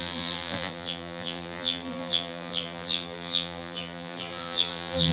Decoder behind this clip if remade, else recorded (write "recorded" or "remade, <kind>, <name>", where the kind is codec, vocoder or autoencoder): remade, vocoder, BigVGAN v2